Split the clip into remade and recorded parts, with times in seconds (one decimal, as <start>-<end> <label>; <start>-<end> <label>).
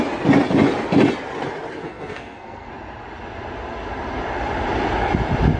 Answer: 0.0-1.8 recorded; 1.8-2.7 remade; 2.7-5.6 recorded